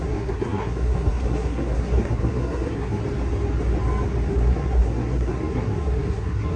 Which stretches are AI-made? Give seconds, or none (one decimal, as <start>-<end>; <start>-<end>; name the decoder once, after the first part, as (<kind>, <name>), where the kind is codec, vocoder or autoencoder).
0.0-3.0 (codec, SNAC); 4.3-6.6